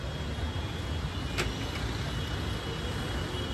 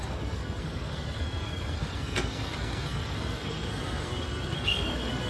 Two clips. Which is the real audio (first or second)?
first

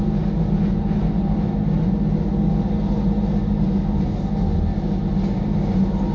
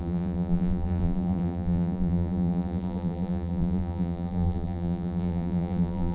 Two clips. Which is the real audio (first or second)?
first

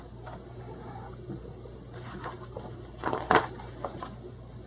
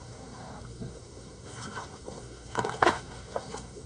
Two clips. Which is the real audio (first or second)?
first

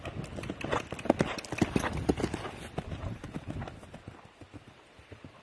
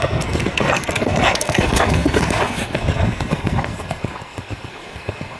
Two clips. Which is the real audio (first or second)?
first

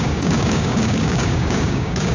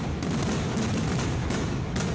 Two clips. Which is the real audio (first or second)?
second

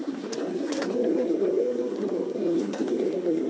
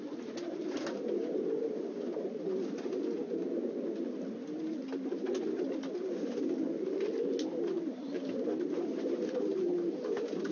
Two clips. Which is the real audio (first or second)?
second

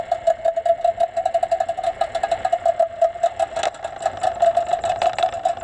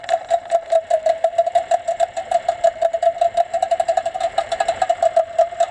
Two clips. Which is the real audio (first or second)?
first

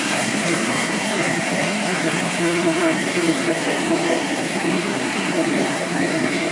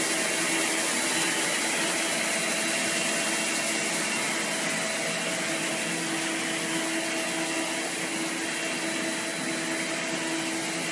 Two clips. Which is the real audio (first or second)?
second